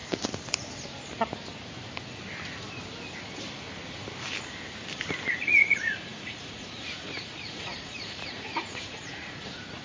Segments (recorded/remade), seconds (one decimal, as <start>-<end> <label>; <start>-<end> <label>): 0.0-5.3 recorded; 5.3-9.8 remade